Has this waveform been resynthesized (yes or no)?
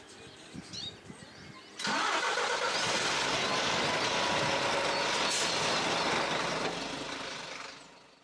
no